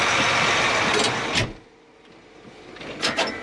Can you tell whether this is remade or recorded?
recorded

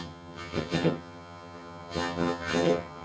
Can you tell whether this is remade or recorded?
remade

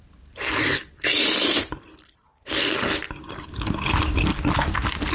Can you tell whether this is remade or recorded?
recorded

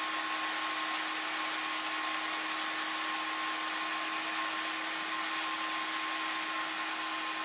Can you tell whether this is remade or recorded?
recorded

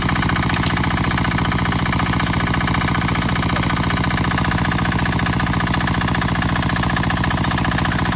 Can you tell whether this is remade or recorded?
recorded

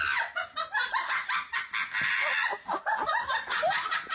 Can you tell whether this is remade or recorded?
recorded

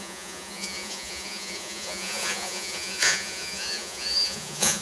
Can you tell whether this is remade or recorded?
remade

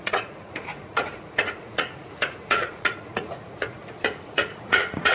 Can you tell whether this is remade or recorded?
remade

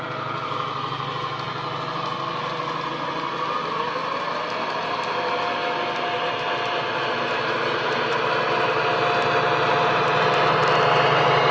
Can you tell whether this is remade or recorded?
recorded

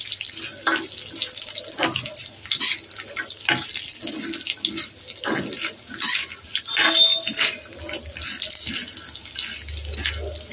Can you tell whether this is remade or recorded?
recorded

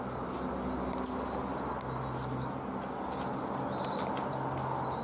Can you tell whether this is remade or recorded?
recorded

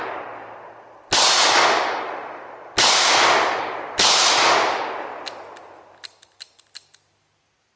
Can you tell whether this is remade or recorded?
recorded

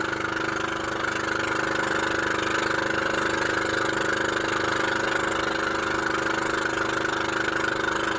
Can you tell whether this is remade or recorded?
recorded